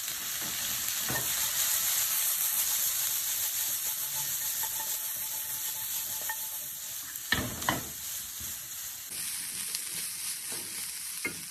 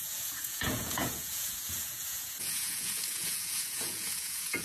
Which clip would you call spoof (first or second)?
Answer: second